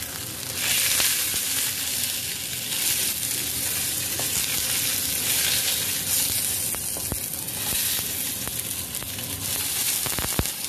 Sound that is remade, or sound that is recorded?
recorded